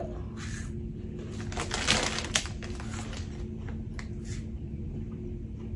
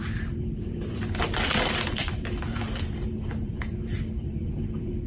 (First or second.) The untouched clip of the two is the first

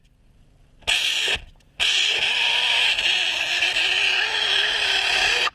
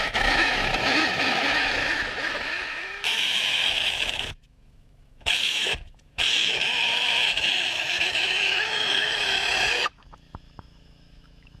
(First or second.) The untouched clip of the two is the first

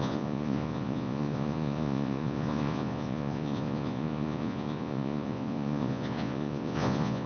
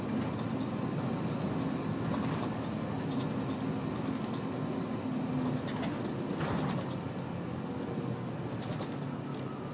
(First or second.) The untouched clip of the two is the second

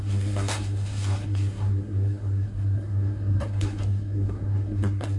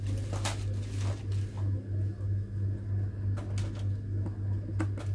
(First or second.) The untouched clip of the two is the second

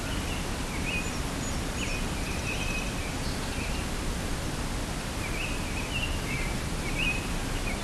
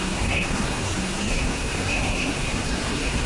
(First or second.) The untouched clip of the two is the first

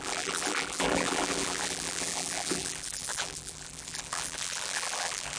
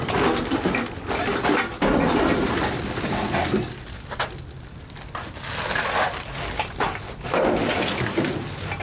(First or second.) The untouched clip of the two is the second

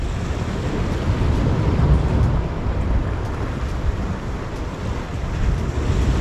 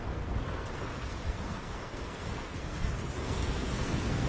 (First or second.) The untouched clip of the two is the first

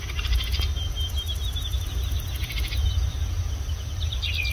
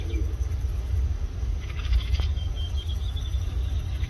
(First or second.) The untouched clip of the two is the first